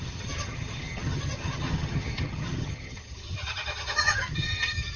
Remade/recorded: remade